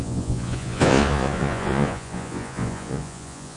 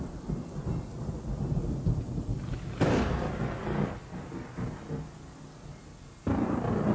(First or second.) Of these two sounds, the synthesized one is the first